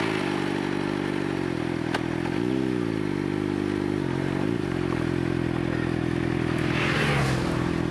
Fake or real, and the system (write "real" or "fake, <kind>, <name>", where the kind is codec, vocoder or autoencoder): real